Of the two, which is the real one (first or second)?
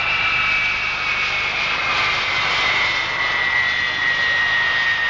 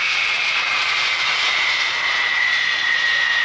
first